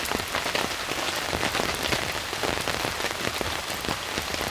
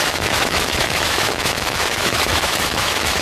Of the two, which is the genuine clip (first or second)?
first